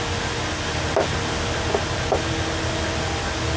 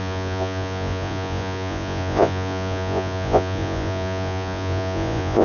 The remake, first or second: second